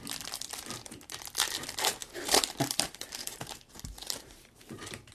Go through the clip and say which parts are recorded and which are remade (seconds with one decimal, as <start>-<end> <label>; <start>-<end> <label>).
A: 0.0-2.0 recorded; 2.0-5.1 remade